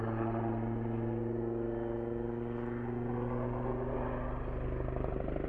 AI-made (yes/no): no